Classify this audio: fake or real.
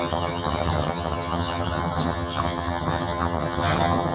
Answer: fake